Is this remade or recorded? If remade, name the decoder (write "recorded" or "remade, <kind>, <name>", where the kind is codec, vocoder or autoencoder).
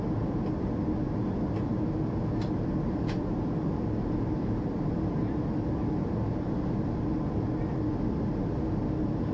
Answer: recorded